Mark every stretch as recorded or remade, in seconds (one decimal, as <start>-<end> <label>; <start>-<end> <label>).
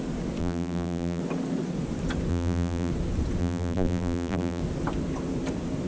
0.0-0.4 recorded; 0.4-1.2 remade; 1.2-2.3 recorded; 2.3-2.9 remade; 2.9-3.4 recorded; 3.4-4.6 remade; 4.6-5.9 recorded